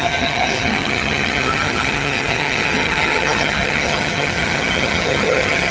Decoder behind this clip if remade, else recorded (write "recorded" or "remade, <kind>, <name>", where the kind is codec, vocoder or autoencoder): remade, vocoder, HiFi-GAN